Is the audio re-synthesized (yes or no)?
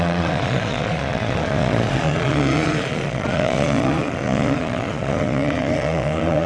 yes